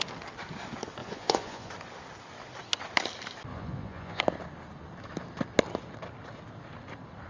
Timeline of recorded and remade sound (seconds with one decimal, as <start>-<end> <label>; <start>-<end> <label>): 0.0-1.0 recorded; 1.0-1.7 remade; 1.7-3.5 recorded; 3.5-4.2 remade; 4.2-7.3 recorded